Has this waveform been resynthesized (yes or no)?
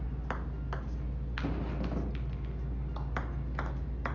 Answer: no